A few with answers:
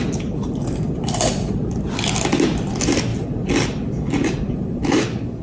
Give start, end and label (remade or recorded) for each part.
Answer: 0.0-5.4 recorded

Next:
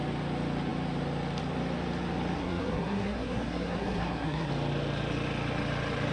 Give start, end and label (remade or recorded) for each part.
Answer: 0.0-2.4 recorded; 2.4-4.5 remade; 4.5-6.1 recorded

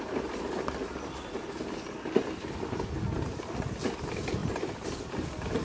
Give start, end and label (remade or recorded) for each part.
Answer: 0.0-5.6 recorded

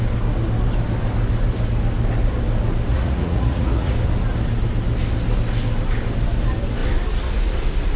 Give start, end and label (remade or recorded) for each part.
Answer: 0.0-2.9 recorded; 2.9-3.9 remade; 3.9-8.0 recorded